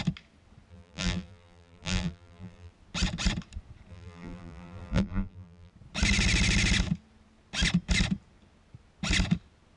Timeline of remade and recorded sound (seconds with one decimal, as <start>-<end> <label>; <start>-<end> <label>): 0.0-0.7 recorded; 0.7-2.7 remade; 2.7-3.9 recorded; 3.9-5.7 remade; 5.7-9.8 recorded